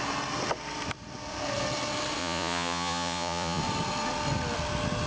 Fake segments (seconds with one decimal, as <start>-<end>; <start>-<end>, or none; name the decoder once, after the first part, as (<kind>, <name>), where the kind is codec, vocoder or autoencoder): 2.2-3.6 (vocoder, Vocos)